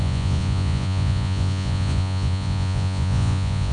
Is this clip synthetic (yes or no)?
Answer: yes